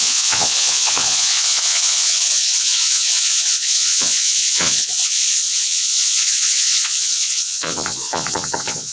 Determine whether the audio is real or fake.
fake